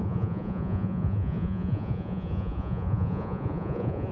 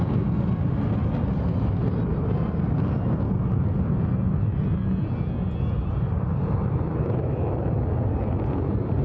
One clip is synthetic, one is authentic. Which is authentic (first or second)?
second